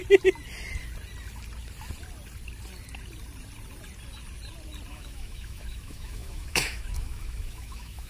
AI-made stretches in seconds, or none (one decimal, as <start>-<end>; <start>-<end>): 4.9-8.1